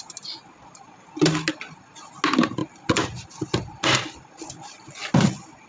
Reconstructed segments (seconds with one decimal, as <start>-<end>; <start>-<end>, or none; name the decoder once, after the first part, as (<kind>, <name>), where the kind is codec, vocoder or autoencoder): none